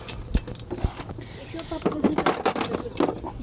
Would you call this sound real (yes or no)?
yes